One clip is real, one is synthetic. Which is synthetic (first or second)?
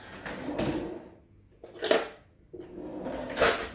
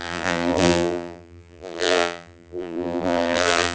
second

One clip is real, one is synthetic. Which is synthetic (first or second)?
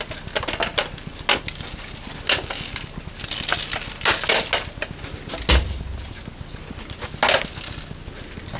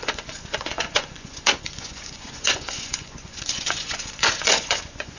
second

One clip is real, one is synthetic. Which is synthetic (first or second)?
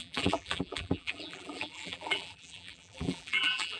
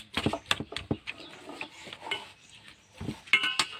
first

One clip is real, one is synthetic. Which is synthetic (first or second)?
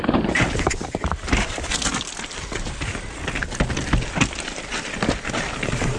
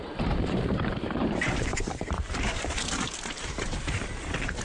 second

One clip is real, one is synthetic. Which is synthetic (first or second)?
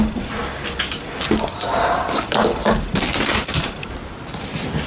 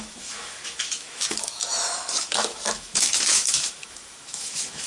second